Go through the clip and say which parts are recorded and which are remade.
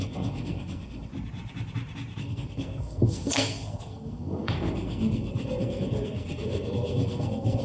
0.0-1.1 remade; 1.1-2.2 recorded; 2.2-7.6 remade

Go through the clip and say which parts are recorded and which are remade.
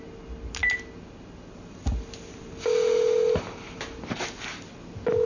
0.0-5.3 recorded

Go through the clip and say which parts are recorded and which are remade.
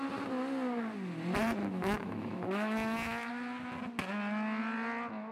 0.0-1.6 recorded; 1.6-3.3 remade; 3.3-5.3 recorded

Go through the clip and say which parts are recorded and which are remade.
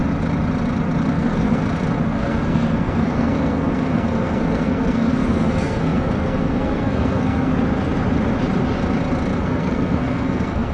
0.0-1.1 recorded; 1.1-1.6 remade; 1.6-2.1 recorded; 2.1-7.5 remade; 7.5-9.4 recorded; 9.4-10.7 remade